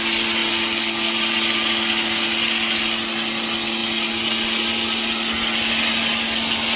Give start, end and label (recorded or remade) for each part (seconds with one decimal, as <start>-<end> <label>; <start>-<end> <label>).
0.0-6.8 recorded